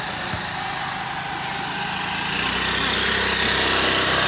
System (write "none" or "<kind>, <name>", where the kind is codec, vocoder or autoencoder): none